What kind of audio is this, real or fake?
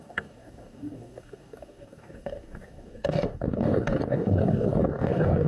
fake